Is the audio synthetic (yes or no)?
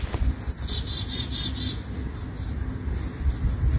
no